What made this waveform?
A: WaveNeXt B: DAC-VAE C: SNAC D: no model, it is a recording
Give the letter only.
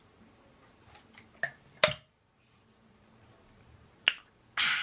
D